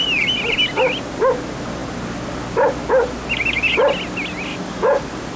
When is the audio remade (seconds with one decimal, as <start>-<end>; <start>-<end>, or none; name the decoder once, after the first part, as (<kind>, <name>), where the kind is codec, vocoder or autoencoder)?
4.5-5.0 (codec, DAC)